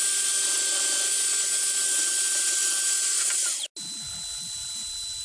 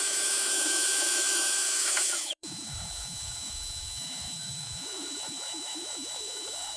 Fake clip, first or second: second